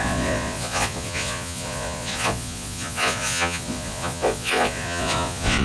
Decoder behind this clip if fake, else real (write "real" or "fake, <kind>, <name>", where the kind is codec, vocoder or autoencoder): fake, vocoder, Vocos